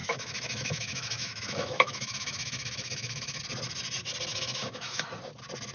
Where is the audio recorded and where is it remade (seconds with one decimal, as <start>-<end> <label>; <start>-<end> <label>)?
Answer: 0.0-3.4 remade; 3.4-4.3 recorded; 4.3-5.1 remade; 5.1-5.7 recorded